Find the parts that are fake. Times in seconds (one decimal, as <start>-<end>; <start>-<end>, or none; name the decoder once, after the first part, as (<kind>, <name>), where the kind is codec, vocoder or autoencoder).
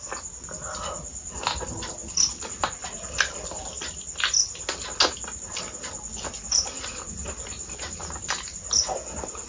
none